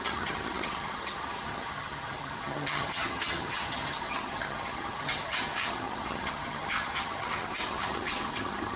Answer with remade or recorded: remade